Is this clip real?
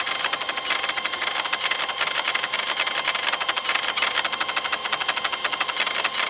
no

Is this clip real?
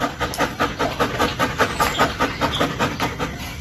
yes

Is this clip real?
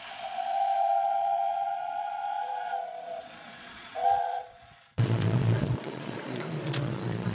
no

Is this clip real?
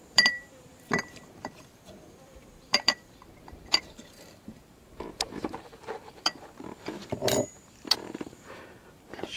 no